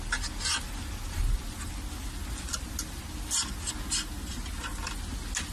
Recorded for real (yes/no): yes